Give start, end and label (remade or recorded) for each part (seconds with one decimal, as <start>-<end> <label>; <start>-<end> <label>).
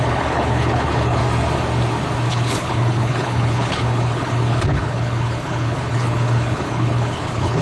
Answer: 0.0-1.2 remade; 1.2-2.3 recorded; 2.3-7.6 remade